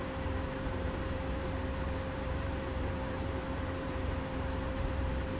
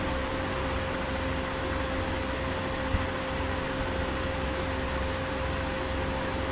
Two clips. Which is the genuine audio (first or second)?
second